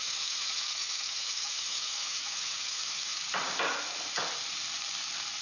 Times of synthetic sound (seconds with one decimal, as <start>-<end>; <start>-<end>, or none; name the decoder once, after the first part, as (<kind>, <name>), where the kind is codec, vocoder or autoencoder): 0.0-3.2 (autoencoder, DAC-VAE)